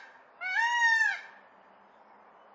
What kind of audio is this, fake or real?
real